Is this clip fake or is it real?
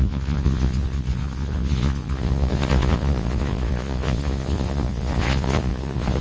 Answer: fake